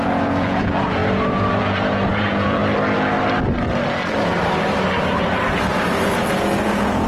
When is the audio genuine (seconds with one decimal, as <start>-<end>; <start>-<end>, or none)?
1.0-1.6; 2.6-6.6